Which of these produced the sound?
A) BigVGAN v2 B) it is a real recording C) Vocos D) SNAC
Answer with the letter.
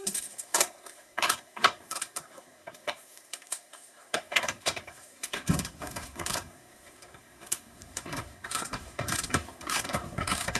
D